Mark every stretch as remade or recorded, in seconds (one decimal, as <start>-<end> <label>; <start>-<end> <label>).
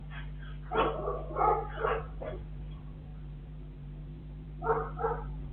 0.0-2.0 recorded; 2.0-5.5 remade